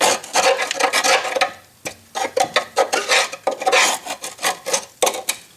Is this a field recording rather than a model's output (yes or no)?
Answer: yes